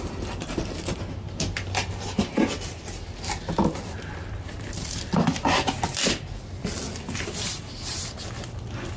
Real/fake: real